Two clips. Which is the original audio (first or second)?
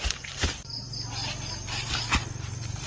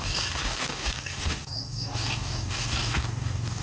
first